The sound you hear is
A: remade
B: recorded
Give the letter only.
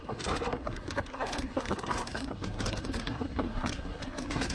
A